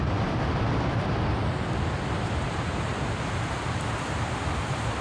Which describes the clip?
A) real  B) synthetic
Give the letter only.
A